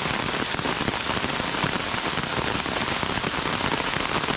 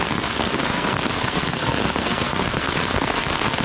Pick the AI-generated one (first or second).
second